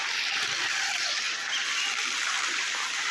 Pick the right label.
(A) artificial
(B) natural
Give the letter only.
B